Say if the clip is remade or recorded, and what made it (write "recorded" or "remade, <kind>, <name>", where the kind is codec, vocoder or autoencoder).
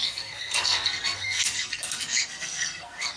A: remade, codec, SNAC